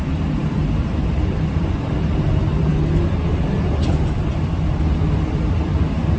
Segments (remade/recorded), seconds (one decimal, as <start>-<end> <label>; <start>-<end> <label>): 0.0-2.7 remade; 2.7-5.0 recorded; 5.0-6.2 remade